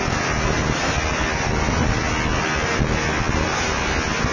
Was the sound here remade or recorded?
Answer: recorded